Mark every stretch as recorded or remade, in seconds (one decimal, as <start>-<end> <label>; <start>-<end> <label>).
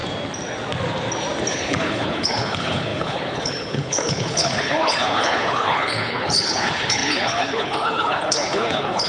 0.0-1.5 recorded; 1.5-9.1 remade